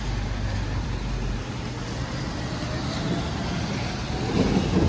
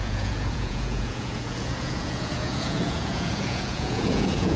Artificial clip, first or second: second